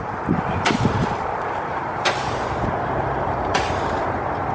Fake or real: fake